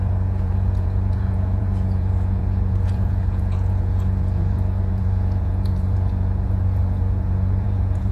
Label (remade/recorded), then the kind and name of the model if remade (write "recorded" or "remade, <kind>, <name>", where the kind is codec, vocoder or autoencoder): remade, vocoder, Vocos